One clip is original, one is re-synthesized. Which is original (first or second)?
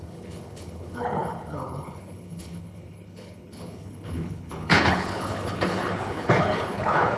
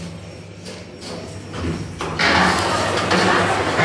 second